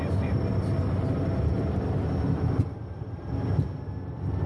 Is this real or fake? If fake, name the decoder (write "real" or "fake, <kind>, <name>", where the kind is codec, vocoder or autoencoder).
real